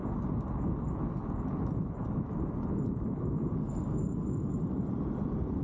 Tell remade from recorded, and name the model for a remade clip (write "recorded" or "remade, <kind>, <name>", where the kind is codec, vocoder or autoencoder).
recorded